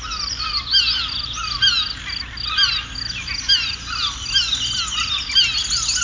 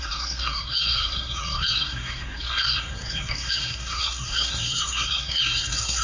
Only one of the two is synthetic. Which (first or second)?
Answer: second